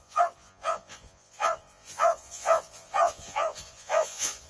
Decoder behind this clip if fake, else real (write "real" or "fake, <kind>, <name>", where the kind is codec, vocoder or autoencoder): fake, vocoder, Vocos